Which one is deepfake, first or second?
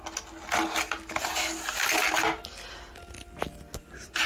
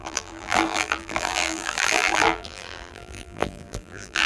second